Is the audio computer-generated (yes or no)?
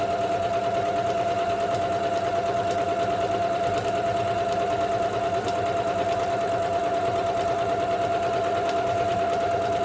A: no